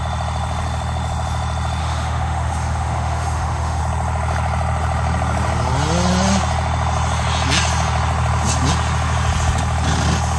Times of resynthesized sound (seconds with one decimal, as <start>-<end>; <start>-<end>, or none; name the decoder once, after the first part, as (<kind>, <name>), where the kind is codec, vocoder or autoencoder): 1.8-3.8 (autoencoder, DAC-VAE)